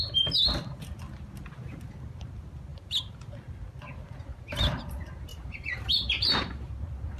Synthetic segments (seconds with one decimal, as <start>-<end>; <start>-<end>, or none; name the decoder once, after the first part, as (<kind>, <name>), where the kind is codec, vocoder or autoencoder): 2.7-3.3 (vocoder, BigVGAN v2); 4.3-4.8; 5.3-6.7